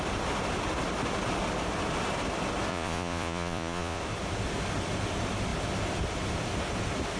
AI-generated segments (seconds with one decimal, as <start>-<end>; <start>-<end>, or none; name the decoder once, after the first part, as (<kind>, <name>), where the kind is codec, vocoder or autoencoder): 2.7-4.0 (vocoder, Vocos)